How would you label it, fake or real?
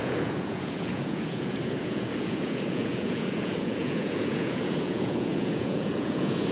fake